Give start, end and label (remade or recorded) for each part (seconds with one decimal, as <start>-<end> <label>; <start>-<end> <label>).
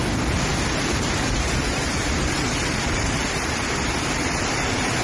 0.0-0.5 recorded; 0.5-3.5 remade; 3.5-5.0 recorded